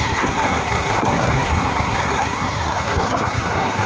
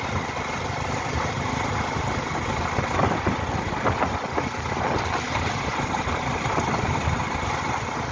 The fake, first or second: first